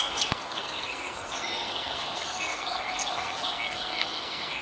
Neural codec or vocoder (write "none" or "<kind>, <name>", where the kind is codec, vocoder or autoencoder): codec, SNAC